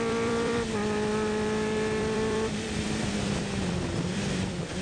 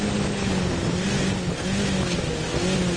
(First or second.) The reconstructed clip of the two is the first